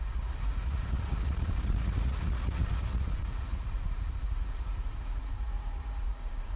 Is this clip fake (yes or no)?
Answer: yes